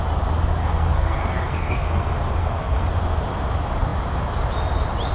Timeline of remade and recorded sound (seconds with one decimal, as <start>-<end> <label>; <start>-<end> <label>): 0.0-0.6 recorded; 0.6-2.9 remade; 2.9-5.1 recorded